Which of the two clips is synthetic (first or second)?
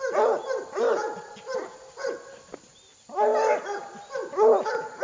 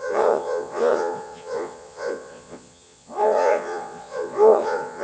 second